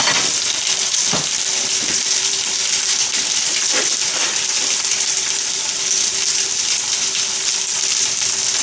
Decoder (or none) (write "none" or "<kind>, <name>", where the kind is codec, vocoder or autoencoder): vocoder, BigVGAN v2